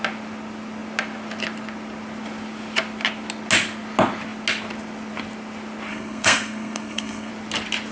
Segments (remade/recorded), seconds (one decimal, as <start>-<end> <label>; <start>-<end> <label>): 0.0-5.9 recorded; 5.9-7.3 remade; 7.3-7.9 recorded